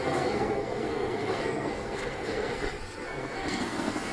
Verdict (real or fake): fake